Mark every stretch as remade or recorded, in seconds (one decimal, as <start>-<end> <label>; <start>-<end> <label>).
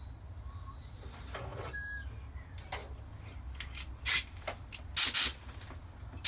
0.0-6.3 recorded